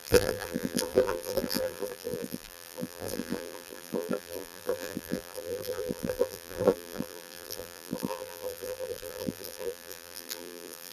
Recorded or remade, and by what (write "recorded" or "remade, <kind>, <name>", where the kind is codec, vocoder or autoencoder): remade, vocoder, BigVGAN v2